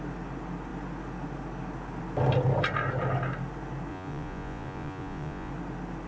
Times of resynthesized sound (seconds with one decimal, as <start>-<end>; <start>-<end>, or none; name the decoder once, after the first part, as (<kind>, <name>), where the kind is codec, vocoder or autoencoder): 3.9-5.5 (vocoder, Vocos)